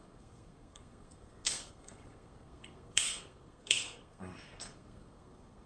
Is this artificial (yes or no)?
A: yes